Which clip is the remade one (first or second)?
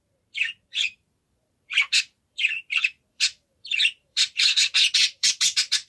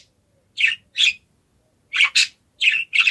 first